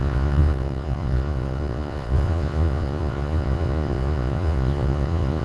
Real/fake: fake